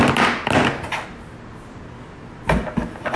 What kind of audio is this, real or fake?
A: real